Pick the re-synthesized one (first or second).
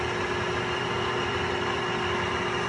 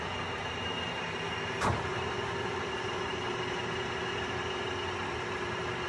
second